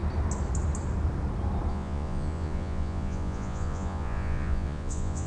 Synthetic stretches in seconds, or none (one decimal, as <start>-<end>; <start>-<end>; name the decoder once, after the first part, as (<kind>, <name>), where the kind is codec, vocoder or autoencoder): 1.7-5.3 (vocoder, Vocos)